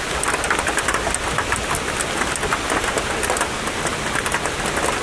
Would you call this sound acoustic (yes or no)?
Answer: yes